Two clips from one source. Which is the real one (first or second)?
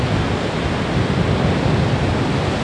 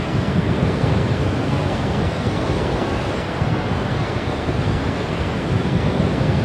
first